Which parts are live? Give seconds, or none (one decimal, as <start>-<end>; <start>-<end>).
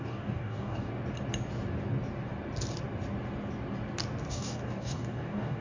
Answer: 0.9-4.3